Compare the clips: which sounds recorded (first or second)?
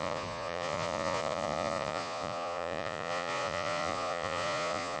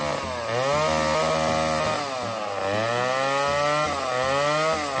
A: second